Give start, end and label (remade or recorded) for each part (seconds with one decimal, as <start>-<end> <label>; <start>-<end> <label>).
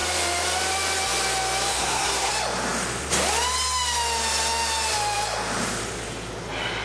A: 0.0-1.7 recorded; 1.7-2.3 remade; 2.3-6.8 recorded